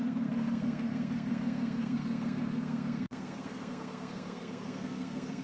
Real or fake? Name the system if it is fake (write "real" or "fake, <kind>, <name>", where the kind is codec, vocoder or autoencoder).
fake, codec, SNAC